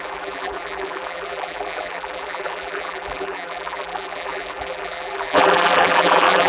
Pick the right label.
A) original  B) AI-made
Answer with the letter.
B